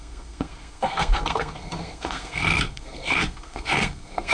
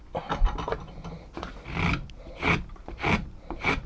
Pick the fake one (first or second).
first